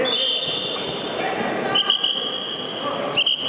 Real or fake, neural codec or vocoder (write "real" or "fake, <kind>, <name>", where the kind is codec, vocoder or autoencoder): real